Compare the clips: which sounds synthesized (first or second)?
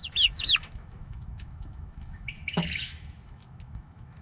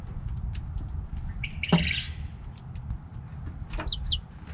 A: first